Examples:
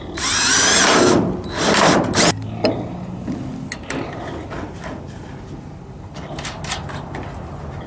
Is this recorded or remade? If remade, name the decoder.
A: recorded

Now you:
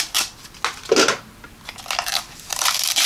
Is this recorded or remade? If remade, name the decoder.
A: recorded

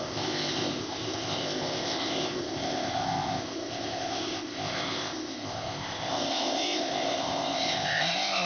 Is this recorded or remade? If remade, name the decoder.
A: remade, codec, ZipCodec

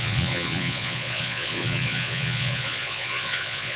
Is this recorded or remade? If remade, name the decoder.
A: remade, vocoder, Vocos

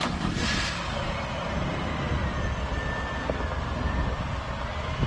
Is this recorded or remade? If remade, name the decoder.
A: recorded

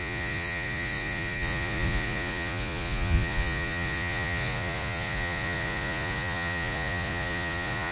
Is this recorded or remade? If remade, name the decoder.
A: remade, vocoder, Vocos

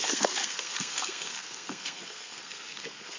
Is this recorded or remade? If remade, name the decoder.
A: remade, codec, SNAC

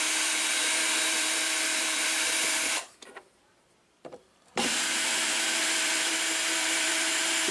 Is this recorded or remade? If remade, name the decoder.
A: remade, vocoder, BigVGAN v2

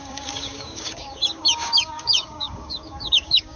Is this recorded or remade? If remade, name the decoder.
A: remade, codec, DAC